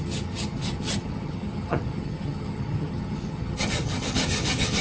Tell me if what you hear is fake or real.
fake